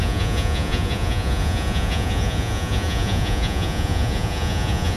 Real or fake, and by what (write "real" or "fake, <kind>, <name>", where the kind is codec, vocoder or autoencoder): fake, vocoder, Vocos